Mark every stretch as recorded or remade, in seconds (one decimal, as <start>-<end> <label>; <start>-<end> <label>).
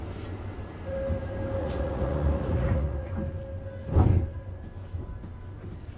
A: 0.0-1.6 recorded; 1.6-3.1 remade; 3.1-6.0 recorded